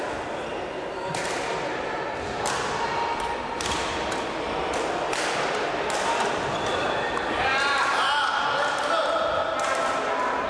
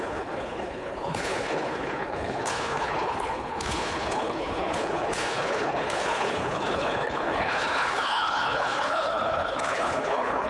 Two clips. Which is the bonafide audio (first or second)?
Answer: first